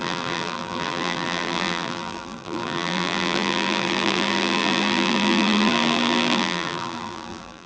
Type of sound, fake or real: fake